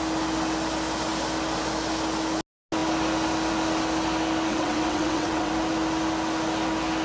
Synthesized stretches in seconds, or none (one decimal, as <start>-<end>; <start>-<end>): 4.5-5.5